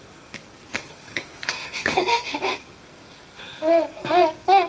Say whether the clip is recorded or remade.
remade